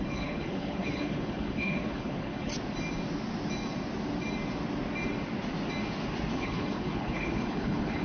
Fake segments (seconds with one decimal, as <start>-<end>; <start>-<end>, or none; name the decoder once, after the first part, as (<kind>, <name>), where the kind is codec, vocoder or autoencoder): 0.0-2.5 (codec, HILCodec); 6.3-8.0